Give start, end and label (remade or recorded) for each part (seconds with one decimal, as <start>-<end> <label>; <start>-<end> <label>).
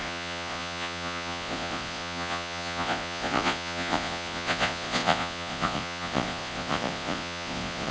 0.0-7.9 remade